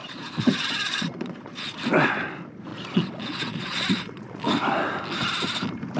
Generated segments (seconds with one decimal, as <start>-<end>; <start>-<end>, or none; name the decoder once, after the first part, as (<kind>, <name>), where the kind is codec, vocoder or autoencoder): 0.0-1.8 (vocoder, Vocos); 2.7-4.4